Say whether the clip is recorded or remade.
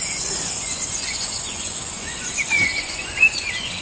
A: remade